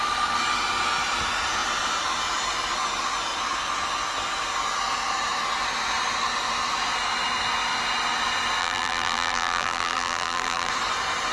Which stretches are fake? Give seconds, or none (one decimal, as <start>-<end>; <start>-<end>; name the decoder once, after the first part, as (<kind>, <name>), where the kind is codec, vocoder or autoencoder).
8.6-10.7 (vocoder, BigVGAN v2)